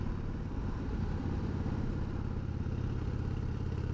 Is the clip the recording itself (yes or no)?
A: yes